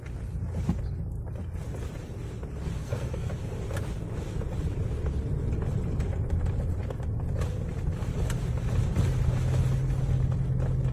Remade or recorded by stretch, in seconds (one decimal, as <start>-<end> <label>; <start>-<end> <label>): 0.0-2.8 recorded; 2.8-3.3 remade; 3.3-10.9 recorded